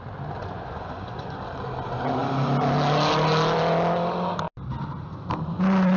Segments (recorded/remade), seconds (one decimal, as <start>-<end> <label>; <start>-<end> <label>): 0.0-0.4 recorded; 0.4-1.4 remade; 1.4-6.0 recorded